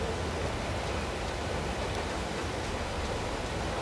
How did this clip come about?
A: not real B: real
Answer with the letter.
B